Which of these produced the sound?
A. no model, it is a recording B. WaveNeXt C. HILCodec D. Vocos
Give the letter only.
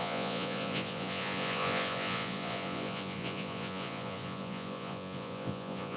D